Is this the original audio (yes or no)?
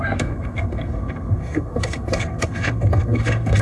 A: no